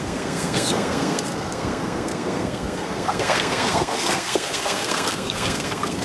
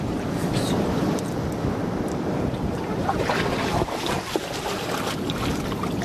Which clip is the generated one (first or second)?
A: first